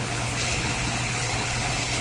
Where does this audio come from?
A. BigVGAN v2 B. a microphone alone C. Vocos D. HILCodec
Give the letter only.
D